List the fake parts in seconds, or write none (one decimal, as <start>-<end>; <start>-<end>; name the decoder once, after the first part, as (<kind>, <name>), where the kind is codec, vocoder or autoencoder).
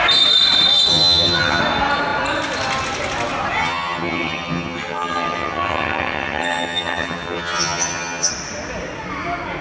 0.9-1.6 (vocoder, HiFi-GAN); 3.6-8.3